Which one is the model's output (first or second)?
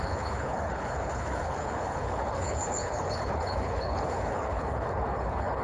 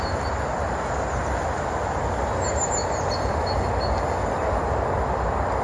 first